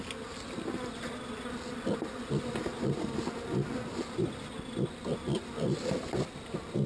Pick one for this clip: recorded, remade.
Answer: recorded